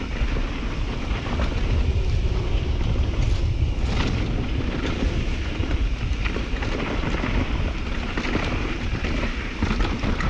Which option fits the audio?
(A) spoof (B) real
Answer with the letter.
B